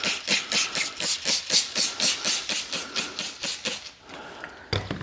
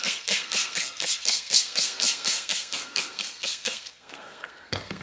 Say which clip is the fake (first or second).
second